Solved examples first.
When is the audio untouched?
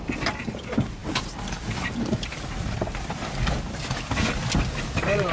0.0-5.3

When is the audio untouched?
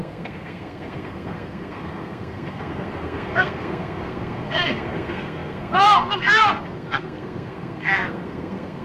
none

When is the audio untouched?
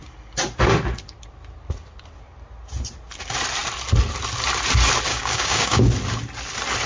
0.0-5.1; 5.9-6.9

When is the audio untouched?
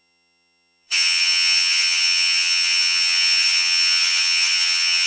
none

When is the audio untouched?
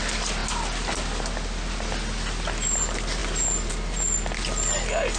0.0-5.2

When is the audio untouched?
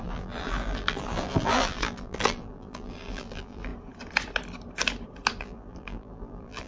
3.7-5.4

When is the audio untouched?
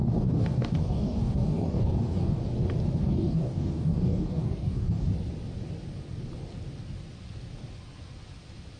2.4-3.0; 5.1-8.8